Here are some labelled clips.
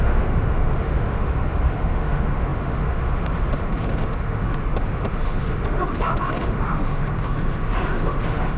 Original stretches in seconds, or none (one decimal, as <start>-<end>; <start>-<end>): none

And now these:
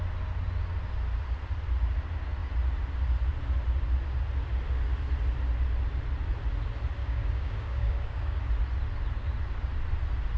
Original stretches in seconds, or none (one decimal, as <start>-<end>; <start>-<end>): 0.0-7.0; 8.4-10.4

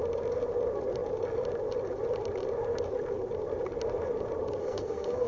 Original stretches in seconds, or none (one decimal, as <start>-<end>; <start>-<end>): 0.0-4.6

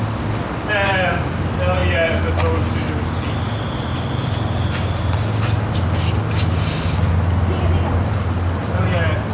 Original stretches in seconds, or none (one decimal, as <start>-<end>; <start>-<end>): 0.0-9.3

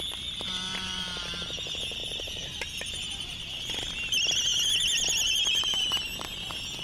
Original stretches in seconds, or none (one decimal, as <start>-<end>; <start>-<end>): 0.0-2.0; 3.9-6.8

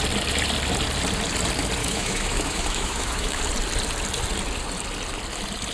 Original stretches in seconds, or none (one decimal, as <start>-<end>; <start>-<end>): 0.0-1.8; 3.4-5.7

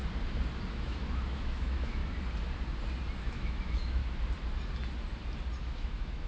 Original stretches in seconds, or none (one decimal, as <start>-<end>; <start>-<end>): 0.0-0.7; 2.0-3.2; 4.0-5.6